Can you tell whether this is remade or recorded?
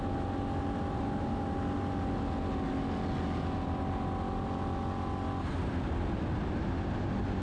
recorded